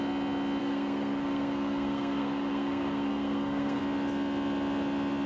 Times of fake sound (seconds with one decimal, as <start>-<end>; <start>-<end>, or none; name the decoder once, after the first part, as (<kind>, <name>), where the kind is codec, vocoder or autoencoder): 0.6-3.8 (codec, SNAC)